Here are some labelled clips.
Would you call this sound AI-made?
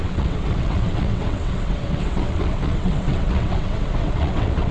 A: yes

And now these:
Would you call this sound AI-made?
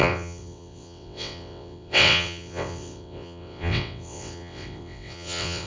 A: yes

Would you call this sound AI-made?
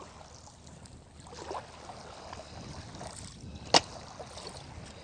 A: no